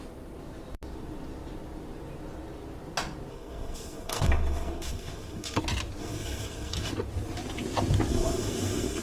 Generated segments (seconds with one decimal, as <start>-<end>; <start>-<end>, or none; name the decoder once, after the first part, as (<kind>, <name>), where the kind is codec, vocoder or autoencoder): 3.3-5.6 (codec, SNAC); 6.0-6.9; 8.1-9.0